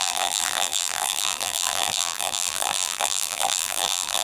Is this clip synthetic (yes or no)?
yes